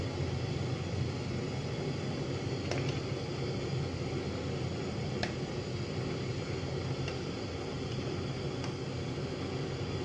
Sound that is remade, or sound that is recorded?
recorded